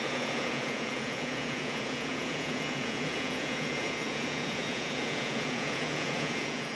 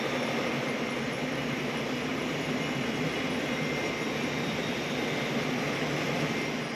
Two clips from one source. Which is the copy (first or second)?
first